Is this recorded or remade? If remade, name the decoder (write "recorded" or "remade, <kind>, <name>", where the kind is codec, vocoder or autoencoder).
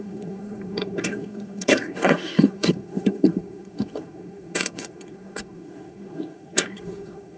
remade, codec, SNAC